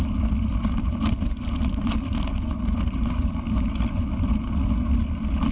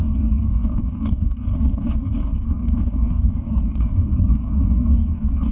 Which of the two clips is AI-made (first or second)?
second